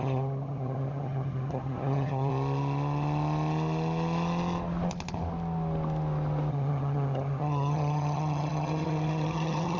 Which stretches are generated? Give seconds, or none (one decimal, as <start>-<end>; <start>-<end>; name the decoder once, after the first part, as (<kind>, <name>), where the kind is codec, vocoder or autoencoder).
0.0-2.3 (vocoder, HiFi-GAN); 6.5-9.8